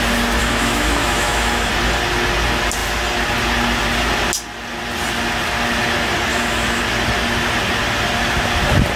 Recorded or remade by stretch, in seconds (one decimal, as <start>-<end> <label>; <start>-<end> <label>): 0.0-0.4 recorded; 0.4-1.7 remade; 1.7-6.3 recorded; 6.3-6.8 remade; 6.8-9.0 recorded